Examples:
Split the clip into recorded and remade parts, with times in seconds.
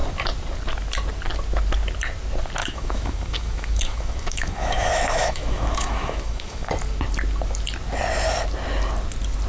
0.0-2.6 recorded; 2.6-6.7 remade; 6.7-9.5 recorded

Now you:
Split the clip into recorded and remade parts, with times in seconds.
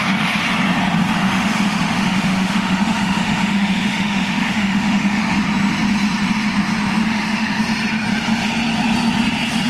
0.0-1.2 recorded; 1.2-5.4 remade; 5.4-7.0 recorded; 7.0-7.6 remade; 7.6-9.7 recorded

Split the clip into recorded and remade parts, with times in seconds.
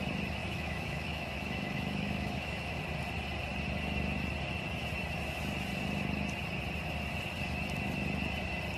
0.0-0.4 recorded; 0.4-2.8 remade; 2.8-8.8 recorded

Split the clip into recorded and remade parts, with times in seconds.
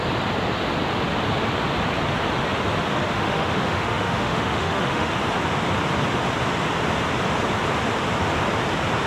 0.0-2.9 recorded; 2.9-5.1 remade; 5.1-9.1 recorded